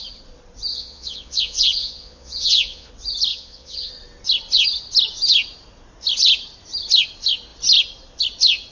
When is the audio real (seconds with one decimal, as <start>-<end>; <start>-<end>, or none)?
0.0-0.7; 2.9-3.3; 3.9-8.7